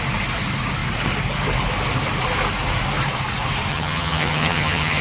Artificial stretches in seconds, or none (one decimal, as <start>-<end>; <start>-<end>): 3.7-5.0